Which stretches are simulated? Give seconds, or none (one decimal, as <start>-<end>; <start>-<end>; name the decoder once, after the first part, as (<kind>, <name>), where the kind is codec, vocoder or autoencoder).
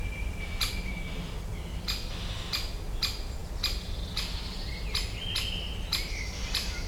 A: none